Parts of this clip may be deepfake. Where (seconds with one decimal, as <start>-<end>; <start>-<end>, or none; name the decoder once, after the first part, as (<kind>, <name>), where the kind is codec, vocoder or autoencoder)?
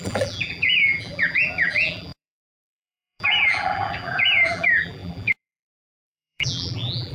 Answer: 0.0-7.1 (vocoder, BigVGAN v2)